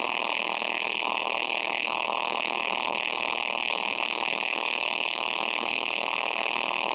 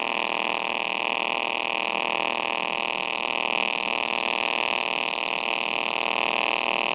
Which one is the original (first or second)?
second